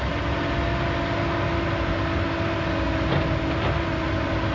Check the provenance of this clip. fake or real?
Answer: real